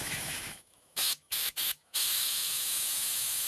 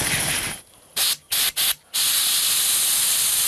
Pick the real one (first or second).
second